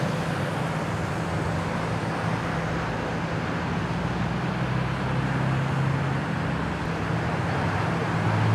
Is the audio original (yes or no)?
yes